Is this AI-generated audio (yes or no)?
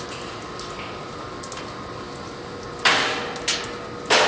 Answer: no